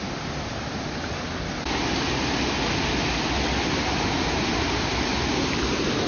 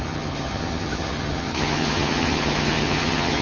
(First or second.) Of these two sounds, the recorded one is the first